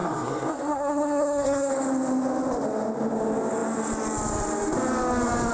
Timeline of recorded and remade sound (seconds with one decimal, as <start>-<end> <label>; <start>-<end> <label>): 0.0-1.7 remade; 1.7-5.5 recorded